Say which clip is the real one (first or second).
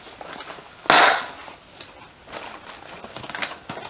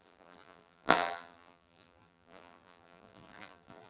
first